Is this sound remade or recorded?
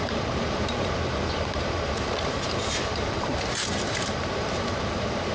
remade